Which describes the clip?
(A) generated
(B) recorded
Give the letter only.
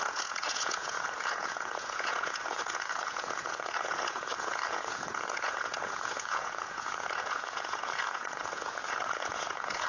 A